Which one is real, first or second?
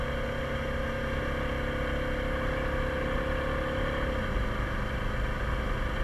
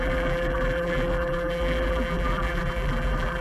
first